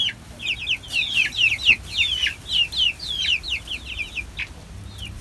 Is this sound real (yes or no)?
yes